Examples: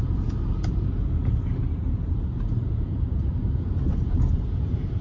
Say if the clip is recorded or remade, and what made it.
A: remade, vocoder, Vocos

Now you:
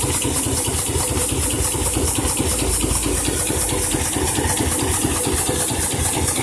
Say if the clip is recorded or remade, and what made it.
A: recorded